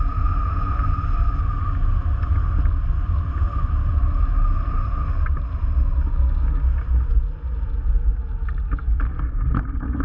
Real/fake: real